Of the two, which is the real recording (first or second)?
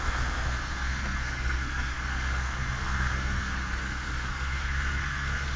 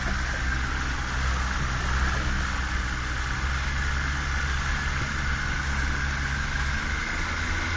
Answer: second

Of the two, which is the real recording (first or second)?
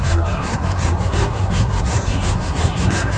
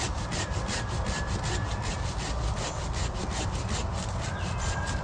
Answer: second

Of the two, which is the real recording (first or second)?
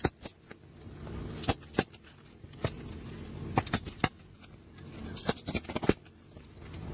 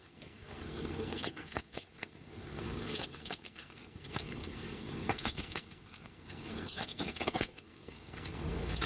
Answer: first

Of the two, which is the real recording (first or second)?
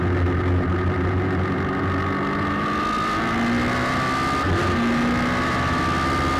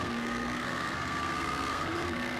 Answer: first